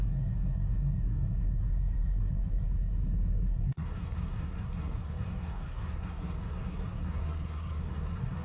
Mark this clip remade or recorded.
remade